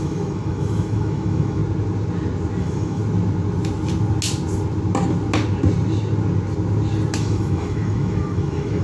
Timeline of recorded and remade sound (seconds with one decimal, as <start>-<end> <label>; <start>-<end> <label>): 0.0-1.6 remade; 1.6-2.6 recorded; 2.6-3.0 remade; 3.0-7.2 recorded; 7.2-8.8 remade